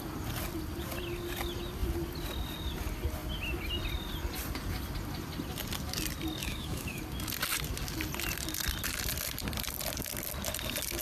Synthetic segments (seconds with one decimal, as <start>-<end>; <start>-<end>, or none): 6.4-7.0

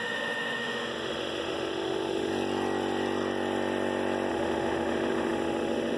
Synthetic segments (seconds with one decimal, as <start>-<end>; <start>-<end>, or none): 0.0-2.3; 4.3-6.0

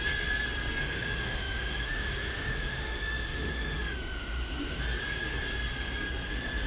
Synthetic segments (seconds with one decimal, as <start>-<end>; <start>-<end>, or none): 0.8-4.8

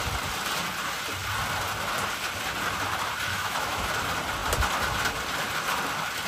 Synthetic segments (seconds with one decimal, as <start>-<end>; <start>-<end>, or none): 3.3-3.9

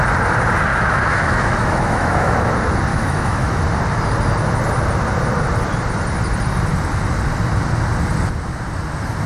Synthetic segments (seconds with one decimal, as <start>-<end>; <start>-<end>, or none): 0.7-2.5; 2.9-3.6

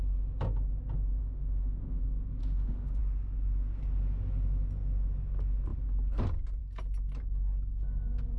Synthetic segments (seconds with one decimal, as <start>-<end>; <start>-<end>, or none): 1.2-2.0; 2.4-3.0